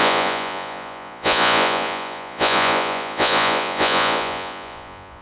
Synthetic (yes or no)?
yes